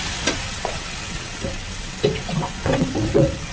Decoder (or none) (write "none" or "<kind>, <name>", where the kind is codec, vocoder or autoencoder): vocoder, WaveNeXt